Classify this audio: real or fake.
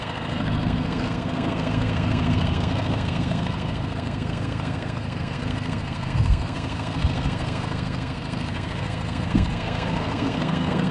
fake